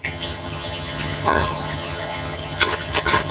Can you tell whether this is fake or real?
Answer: fake